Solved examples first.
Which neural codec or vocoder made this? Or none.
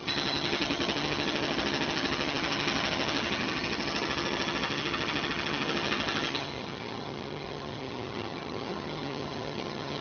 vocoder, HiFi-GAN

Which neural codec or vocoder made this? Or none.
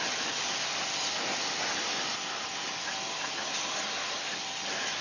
none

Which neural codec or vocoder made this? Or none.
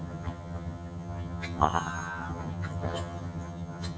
vocoder, HiFi-GAN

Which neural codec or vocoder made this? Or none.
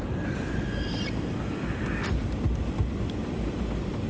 none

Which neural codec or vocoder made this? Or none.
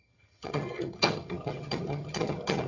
vocoder, HiFi-GAN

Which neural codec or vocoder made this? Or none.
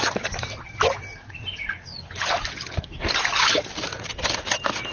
none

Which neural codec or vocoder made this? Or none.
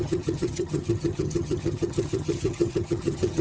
vocoder, HiFi-GAN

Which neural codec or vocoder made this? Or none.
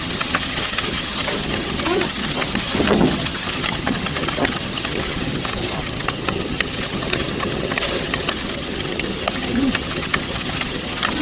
vocoder, HiFi-GAN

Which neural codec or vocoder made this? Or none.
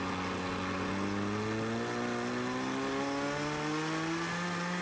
none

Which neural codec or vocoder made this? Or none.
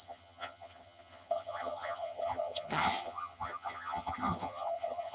vocoder, HiFi-GAN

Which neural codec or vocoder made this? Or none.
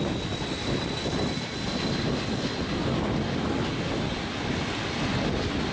none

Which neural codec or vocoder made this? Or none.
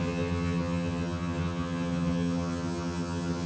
vocoder, HiFi-GAN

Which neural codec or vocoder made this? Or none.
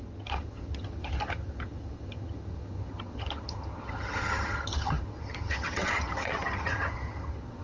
vocoder, HiFi-GAN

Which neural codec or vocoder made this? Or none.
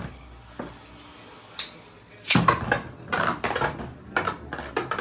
none